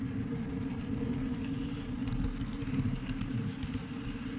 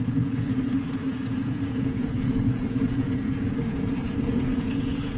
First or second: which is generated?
second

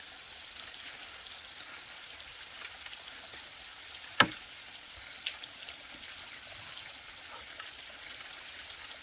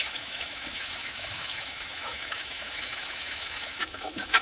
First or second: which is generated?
second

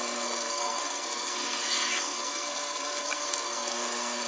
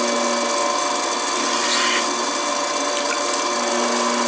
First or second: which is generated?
first